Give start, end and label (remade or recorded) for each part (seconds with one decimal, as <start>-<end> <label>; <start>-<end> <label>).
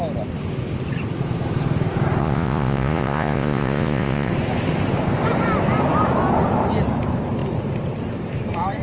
0.0-2.2 recorded; 2.2-4.3 remade; 4.3-8.8 recorded